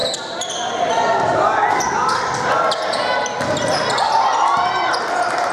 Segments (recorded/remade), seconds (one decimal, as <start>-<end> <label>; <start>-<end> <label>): 0.0-5.5 recorded